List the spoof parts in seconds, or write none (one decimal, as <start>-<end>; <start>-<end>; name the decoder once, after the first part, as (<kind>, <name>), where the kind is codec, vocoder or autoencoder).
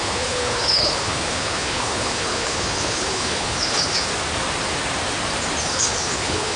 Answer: 0.0-4.1 (codec, HILCodec); 5.6-6.6